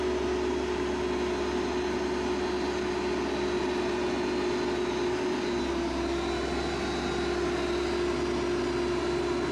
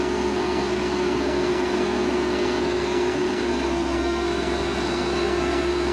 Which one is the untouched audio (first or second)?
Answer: first